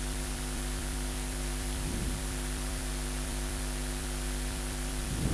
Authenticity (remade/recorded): remade